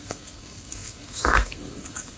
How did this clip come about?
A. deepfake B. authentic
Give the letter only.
A